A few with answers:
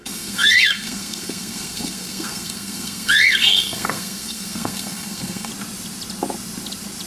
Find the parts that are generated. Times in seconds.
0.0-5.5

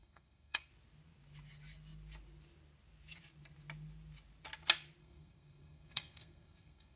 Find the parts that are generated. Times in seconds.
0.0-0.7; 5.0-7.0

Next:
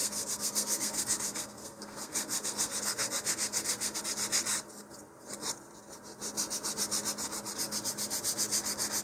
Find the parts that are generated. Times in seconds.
0.0-4.0